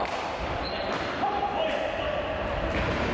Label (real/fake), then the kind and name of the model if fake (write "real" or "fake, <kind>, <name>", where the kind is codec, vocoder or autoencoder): fake, vocoder, BigVGAN v2